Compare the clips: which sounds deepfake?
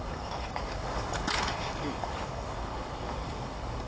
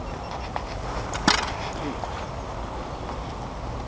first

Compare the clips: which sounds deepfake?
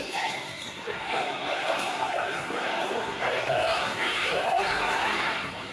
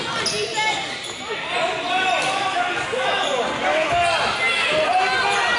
first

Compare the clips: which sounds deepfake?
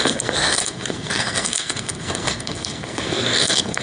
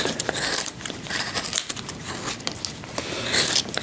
first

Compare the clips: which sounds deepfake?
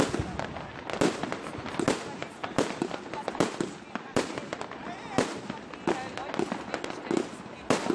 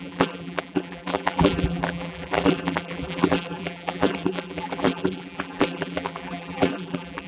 second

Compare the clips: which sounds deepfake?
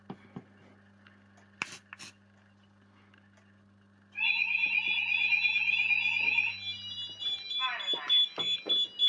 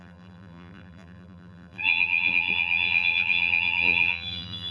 second